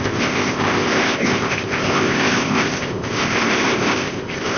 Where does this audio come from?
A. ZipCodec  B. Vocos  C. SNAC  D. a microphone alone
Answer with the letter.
A